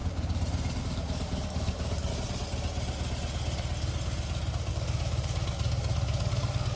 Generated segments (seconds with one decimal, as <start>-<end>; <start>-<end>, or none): 0.8-2.1; 4.7-6.8